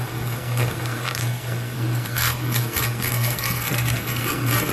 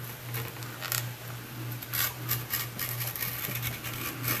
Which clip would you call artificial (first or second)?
first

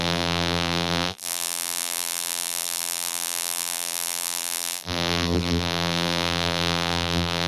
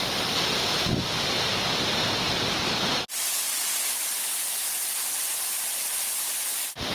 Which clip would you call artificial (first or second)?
first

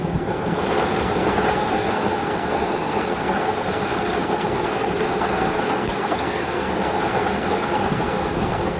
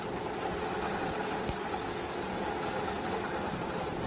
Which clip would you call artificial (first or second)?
first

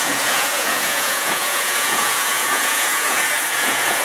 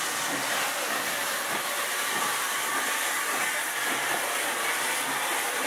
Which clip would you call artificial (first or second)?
first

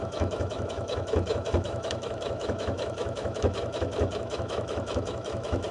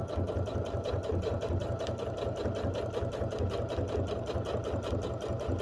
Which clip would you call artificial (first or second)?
first